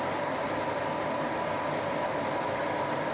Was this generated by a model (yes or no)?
no